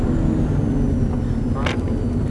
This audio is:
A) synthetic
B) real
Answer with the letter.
B